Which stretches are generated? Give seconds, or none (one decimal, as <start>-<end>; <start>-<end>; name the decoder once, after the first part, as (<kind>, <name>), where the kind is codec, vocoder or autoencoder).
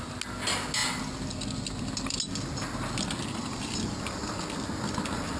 none